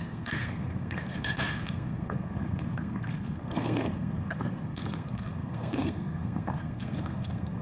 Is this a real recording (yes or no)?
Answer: no